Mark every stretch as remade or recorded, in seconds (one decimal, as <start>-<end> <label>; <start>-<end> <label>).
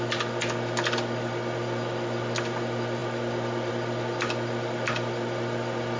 0.0-6.0 recorded